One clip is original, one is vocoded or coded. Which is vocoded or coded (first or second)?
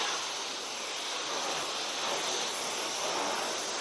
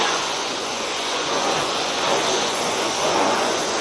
second